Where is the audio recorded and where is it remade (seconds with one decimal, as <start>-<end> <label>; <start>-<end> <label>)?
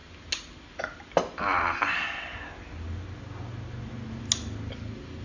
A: 0.0-5.2 recorded